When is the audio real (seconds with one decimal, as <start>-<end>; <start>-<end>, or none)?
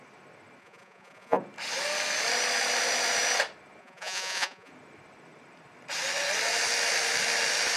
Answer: 0.0-0.6; 1.4-3.8; 4.7-7.8